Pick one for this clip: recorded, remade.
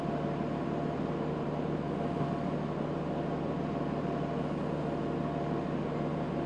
recorded